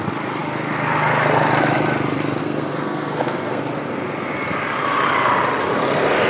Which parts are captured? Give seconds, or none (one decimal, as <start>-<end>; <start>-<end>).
0.0-2.4; 3.6-6.3